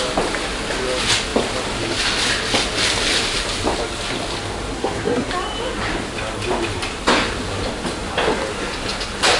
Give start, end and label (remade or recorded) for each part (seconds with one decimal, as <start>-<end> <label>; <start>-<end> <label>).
0.0-4.7 recorded; 4.7-5.3 remade; 5.3-9.4 recorded